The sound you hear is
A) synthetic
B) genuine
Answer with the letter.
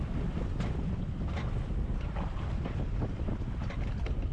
B